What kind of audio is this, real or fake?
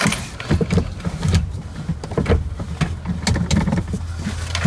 real